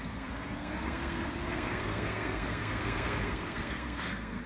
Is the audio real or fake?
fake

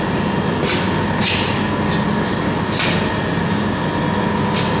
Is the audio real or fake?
real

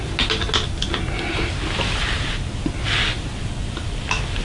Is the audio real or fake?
real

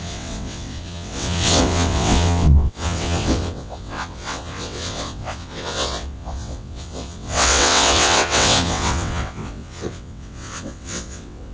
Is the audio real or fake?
fake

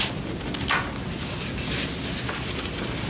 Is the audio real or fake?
real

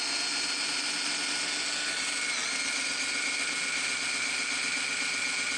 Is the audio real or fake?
real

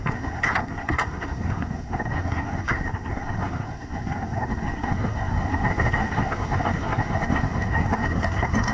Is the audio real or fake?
fake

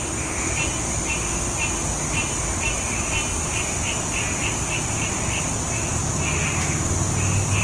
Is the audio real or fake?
real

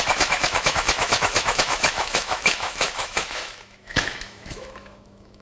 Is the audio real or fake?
fake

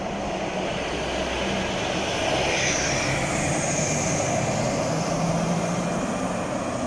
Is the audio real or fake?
real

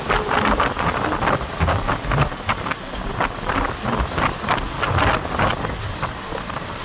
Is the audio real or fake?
real